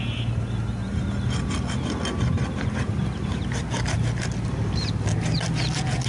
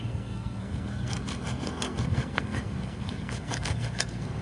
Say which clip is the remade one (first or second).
second